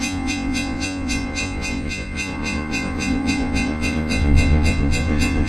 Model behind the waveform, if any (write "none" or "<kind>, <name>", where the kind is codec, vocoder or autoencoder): vocoder, Vocos